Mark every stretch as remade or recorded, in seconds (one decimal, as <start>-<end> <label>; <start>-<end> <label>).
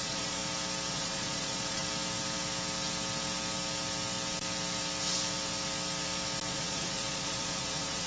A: 0.0-0.4 remade; 0.4-0.9 recorded; 0.9-1.8 remade; 1.8-6.5 recorded; 6.5-8.1 remade